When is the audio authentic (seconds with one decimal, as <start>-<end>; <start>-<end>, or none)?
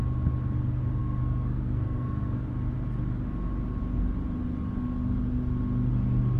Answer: 0.0-1.0; 2.4-6.4